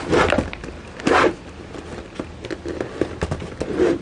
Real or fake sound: real